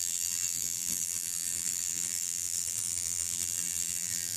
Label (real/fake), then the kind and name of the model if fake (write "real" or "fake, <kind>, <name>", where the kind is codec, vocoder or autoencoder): fake, vocoder, BigVGAN v2